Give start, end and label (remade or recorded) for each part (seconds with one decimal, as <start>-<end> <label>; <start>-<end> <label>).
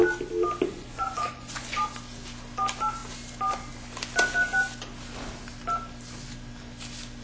0.0-0.7 recorded; 0.7-1.8 remade; 1.8-7.2 recorded